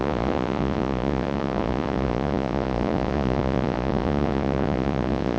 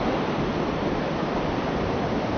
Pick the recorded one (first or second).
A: second